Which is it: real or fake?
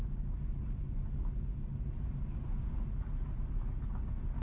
real